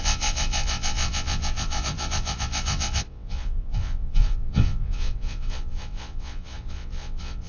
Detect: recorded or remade remade